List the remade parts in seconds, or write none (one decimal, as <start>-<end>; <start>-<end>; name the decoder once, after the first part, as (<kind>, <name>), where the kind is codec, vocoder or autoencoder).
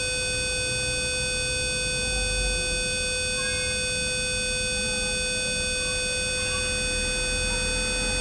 none